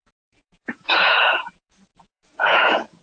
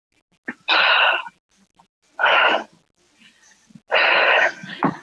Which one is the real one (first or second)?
second